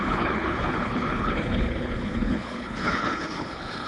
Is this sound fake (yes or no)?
yes